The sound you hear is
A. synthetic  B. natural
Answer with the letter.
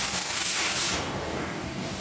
A